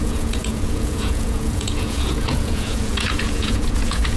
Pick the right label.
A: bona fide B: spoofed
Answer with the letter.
B